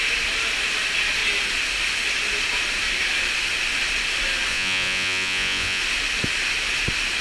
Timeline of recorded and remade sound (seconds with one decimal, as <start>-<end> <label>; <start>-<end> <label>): 0.0-4.5 recorded; 4.5-5.8 remade; 5.8-7.2 recorded